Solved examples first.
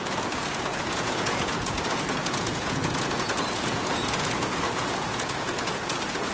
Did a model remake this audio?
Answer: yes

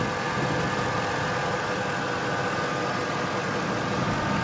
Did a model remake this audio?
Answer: no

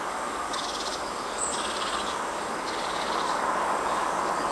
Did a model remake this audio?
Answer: yes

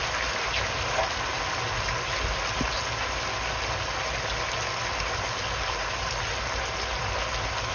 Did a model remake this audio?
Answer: no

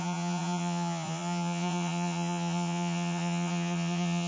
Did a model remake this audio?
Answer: yes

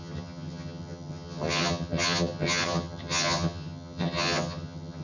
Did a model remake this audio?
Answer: yes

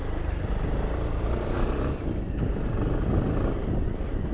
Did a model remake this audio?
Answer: no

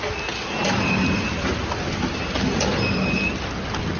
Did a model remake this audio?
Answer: no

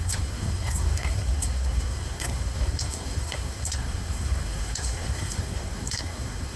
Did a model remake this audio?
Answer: yes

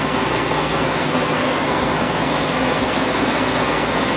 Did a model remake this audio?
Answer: yes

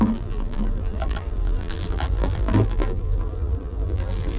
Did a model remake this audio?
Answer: yes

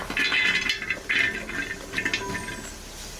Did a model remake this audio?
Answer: no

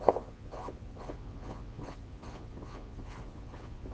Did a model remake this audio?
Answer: yes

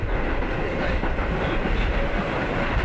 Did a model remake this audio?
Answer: no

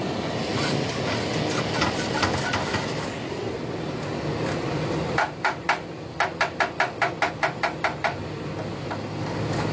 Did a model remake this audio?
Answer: no